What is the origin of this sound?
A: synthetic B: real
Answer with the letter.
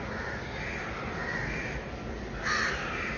B